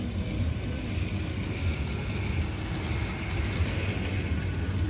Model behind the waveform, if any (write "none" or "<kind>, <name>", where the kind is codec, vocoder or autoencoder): none